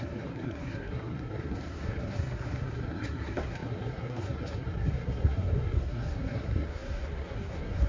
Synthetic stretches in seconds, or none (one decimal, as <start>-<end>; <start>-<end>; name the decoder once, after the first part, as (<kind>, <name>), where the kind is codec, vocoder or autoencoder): 0.0-7.9 (codec, SNAC)